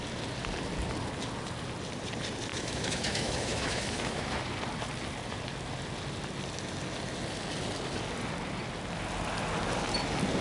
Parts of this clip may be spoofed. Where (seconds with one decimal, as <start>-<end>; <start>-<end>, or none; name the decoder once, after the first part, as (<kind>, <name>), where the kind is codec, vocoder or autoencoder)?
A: 2.5-4.4 (autoencoder, DAC-VAE)